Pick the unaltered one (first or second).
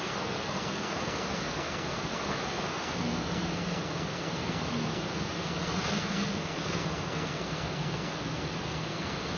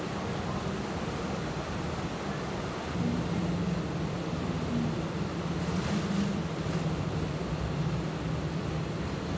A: second